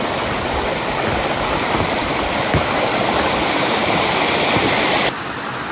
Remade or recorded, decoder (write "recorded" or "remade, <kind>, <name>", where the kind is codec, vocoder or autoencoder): recorded